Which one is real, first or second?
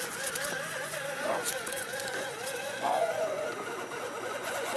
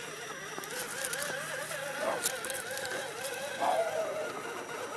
second